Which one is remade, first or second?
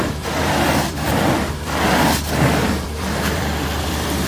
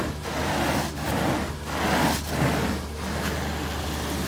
first